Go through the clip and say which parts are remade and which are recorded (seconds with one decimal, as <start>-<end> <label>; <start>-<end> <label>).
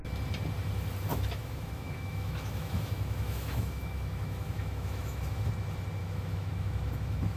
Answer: 0.0-1.1 recorded; 1.1-5.5 remade; 5.5-6.0 recorded; 6.0-7.4 remade